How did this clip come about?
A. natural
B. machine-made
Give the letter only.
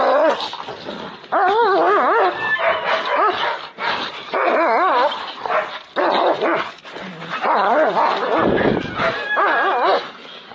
A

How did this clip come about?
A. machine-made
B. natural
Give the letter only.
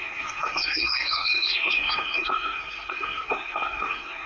A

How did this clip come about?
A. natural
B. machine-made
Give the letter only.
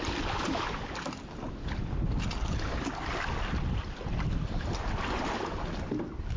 A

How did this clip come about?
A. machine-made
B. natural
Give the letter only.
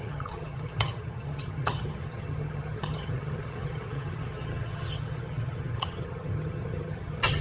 A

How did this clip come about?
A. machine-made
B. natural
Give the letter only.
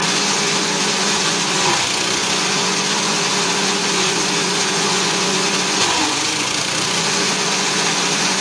A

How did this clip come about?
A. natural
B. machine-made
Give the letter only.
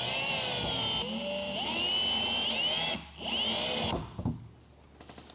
A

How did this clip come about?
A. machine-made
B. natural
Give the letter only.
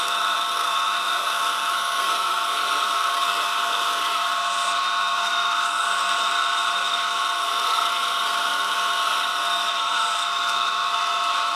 A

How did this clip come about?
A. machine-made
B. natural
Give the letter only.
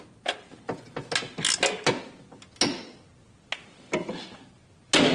B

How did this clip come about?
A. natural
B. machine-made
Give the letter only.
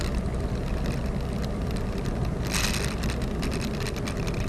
A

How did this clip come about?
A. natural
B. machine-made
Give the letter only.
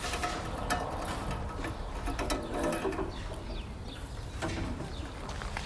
A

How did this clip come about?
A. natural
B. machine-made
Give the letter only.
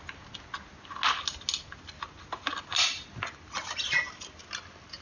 A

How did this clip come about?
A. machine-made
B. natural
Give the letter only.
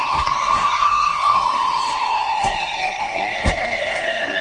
A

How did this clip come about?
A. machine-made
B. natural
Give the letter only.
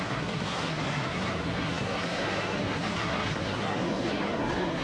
A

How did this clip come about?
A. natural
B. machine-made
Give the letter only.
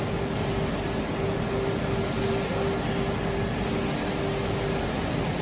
A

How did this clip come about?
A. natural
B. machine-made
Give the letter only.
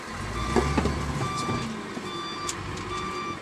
A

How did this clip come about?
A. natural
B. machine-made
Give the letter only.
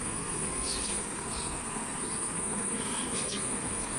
B